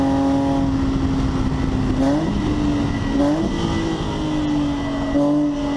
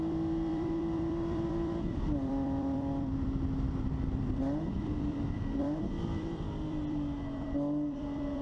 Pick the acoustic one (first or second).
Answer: first